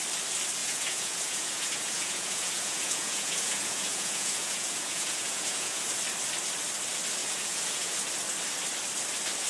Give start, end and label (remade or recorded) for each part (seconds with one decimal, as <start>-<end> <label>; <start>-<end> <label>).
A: 0.0-0.6 recorded; 0.6-5.8 remade; 5.8-7.2 recorded; 7.2-8.0 remade; 8.0-9.5 recorded